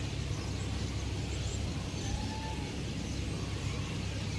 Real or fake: real